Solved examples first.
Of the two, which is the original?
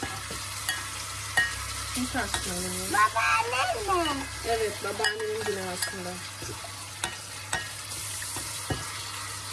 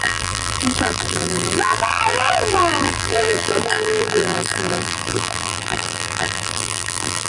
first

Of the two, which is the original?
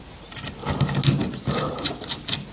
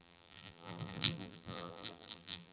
first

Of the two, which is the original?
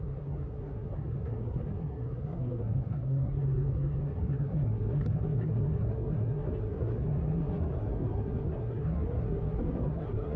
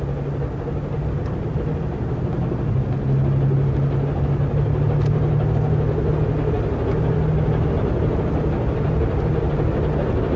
second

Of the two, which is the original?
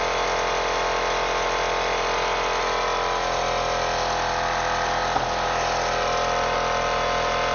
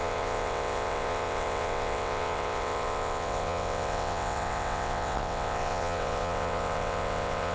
first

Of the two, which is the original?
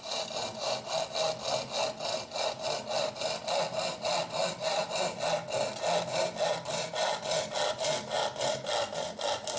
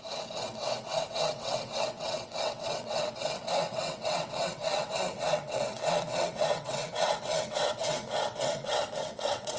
first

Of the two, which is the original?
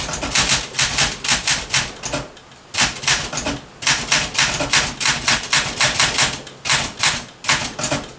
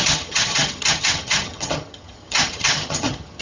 first